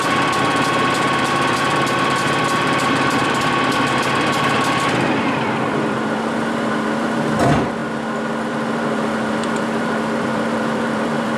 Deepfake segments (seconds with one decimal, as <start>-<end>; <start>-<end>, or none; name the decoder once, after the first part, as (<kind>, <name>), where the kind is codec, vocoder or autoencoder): 0.0-7.8 (vocoder, BigVGAN v2); 8.5-11.4